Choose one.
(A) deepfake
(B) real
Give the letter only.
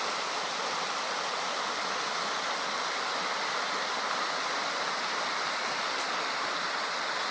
B